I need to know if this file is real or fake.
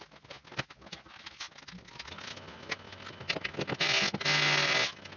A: real